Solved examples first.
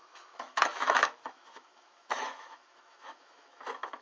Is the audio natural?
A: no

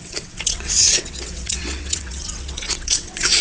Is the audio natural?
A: no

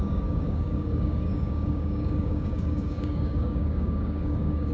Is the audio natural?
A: no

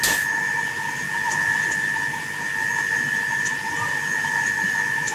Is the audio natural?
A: yes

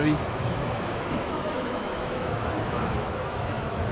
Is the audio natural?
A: no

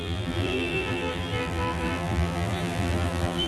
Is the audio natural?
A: no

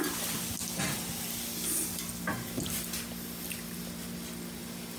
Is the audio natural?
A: yes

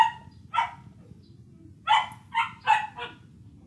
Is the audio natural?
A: yes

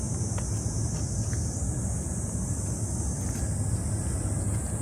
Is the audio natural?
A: yes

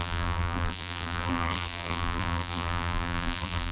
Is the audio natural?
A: no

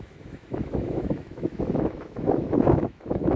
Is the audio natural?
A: no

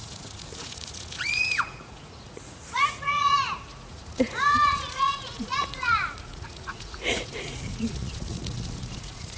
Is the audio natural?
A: no